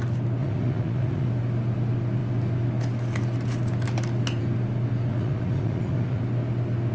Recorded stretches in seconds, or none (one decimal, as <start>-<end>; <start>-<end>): 0.0-0.4; 1.3-5.1; 6.2-6.9